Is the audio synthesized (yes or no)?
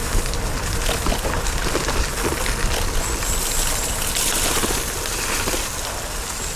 no